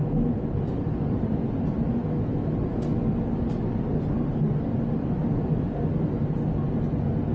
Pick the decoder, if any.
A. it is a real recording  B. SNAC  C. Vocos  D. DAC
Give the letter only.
A